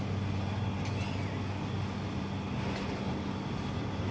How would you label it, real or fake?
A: real